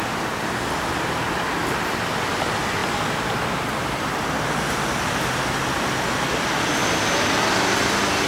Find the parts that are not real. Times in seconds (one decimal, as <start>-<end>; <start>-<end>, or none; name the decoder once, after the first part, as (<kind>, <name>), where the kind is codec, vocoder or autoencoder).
none